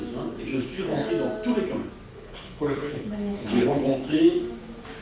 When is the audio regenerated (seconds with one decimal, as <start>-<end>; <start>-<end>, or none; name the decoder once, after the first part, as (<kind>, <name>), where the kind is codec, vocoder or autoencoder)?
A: 0.5-1.1 (codec, HILCodec); 2.1-4.2